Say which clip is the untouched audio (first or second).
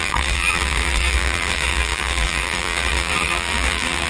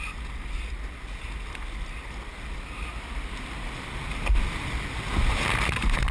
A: second